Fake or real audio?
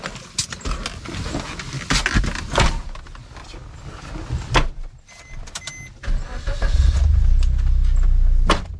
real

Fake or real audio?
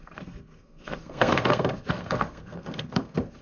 fake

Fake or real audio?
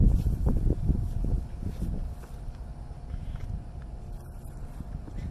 real